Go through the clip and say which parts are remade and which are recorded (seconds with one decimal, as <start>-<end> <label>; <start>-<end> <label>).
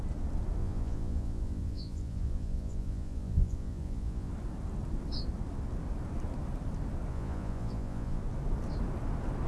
0.0-0.6 recorded; 0.6-4.3 remade; 4.3-7.1 recorded; 7.1-8.2 remade; 8.2-9.5 recorded